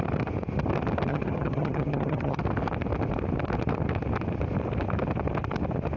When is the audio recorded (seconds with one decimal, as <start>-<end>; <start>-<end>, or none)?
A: 0.0-1.1; 2.4-6.0

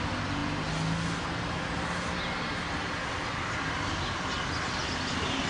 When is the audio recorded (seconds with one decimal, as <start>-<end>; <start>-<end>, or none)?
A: 0.0-5.5